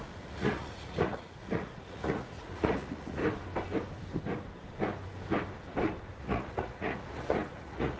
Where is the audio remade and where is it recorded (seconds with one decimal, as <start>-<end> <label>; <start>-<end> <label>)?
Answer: 0.0-3.2 remade; 3.2-6.2 recorded; 6.2-8.0 remade